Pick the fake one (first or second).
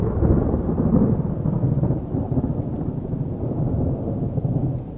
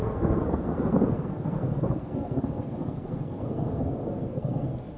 second